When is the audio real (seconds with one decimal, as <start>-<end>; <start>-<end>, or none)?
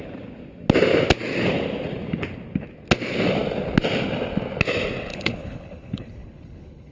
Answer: 0.0-5.1